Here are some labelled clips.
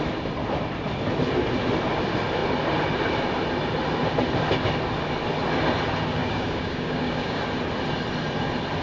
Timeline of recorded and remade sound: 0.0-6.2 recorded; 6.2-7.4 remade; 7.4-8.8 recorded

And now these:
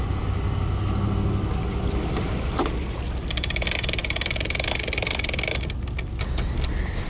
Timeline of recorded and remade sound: 0.0-7.1 recorded

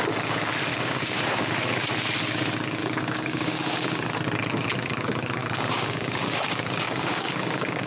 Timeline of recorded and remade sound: 0.0-0.7 recorded; 0.7-1.5 remade; 1.5-2.8 recorded; 2.8-4.1 remade; 4.1-5.4 recorded; 5.4-7.9 remade